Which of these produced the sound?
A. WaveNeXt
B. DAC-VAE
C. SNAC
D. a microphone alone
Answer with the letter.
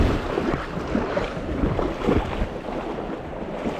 D